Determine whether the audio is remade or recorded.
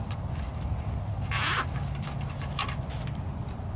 recorded